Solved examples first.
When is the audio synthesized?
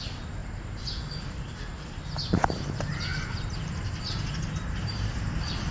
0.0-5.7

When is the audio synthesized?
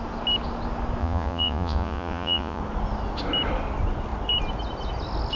1.0-2.6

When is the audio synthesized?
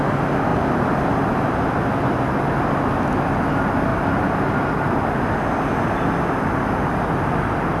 none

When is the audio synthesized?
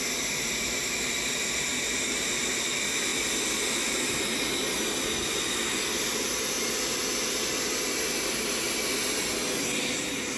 none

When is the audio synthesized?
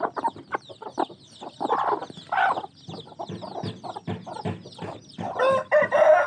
none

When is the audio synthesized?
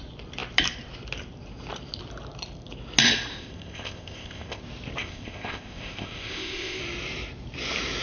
3.3-4.6; 5.0-6.8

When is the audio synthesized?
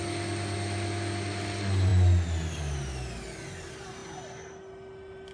none